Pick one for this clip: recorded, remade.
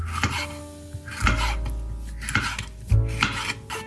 recorded